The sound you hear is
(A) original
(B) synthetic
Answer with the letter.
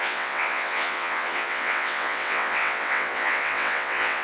B